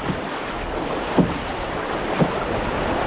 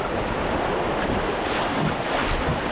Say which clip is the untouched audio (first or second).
second